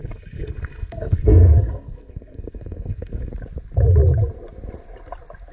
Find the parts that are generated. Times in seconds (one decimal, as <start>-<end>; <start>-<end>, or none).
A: 0.0-3.3